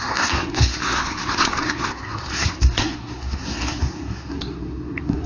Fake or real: fake